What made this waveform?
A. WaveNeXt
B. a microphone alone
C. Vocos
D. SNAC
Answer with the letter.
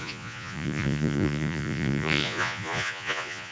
C